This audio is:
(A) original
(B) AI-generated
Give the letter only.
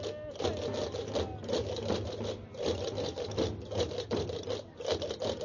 A